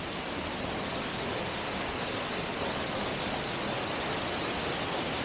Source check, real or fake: real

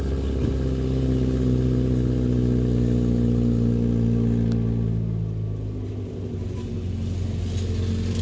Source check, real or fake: real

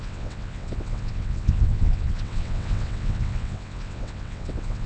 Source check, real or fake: fake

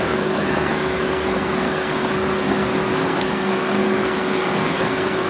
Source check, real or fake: fake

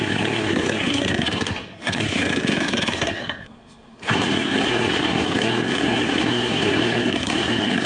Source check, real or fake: fake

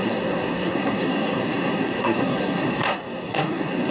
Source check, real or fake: fake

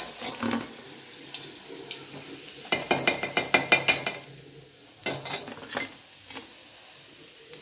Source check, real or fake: real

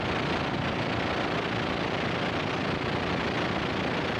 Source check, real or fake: real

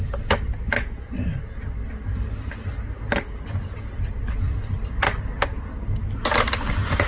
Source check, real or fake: real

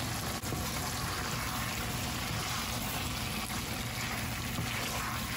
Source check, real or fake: real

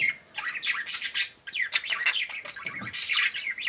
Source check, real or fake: real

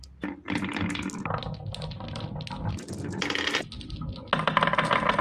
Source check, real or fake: real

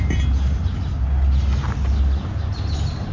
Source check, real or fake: real